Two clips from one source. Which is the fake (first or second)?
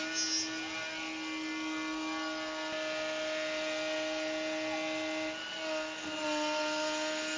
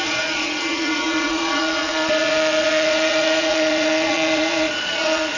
second